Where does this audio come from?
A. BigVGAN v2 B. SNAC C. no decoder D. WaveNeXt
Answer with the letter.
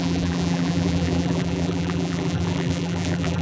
A